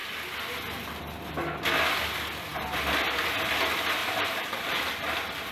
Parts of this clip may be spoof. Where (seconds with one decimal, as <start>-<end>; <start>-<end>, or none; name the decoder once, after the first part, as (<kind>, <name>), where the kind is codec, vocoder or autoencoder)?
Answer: 4.0-4.7 (vocoder, BigVGAN v2)

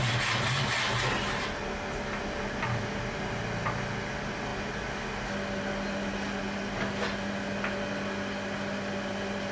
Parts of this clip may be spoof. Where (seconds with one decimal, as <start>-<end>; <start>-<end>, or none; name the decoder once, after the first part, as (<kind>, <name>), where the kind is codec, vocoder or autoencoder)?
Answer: none

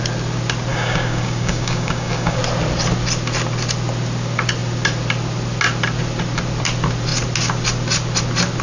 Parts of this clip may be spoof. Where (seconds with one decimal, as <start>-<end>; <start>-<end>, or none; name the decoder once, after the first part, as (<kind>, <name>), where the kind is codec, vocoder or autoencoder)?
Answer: 0.7-2.4 (codec, DAC)

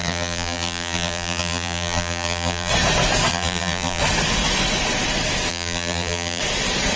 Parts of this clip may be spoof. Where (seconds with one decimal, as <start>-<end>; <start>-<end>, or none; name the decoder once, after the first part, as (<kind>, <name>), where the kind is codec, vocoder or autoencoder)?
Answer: 0.0-2.7 (vocoder, BigVGAN v2); 3.3-4.0; 5.5-6.4

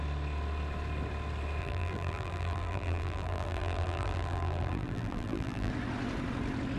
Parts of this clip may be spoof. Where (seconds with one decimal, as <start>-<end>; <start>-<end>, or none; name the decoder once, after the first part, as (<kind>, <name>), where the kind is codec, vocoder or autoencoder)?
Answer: 1.6-5.7 (vocoder, BigVGAN v2)

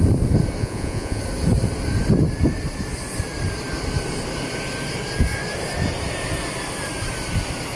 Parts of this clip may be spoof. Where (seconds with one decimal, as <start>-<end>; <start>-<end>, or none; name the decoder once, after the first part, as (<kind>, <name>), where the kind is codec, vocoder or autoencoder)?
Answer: 0.6-1.2 (vocoder, Vocos)

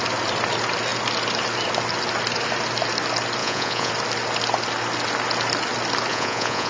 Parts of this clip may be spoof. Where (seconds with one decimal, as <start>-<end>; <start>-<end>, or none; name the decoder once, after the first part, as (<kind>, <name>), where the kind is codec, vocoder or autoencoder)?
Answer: 3.4-3.9 (vocoder, Vocos); 6.1-6.7